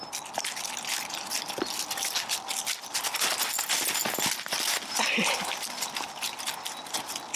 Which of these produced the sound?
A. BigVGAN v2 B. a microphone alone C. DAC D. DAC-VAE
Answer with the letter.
B